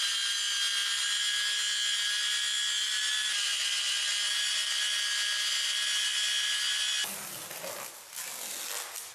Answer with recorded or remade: recorded